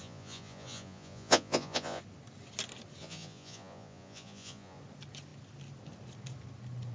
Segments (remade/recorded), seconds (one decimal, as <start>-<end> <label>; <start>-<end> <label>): 0.0-2.0 remade; 2.0-3.0 recorded; 3.0-4.8 remade; 4.8-6.9 recorded